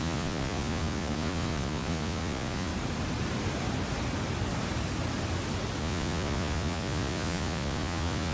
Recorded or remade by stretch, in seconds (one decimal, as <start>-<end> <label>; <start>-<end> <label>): 0.0-2.7 remade; 2.7-5.8 recorded; 5.8-8.3 remade